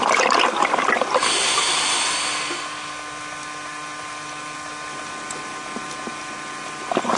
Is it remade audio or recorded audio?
recorded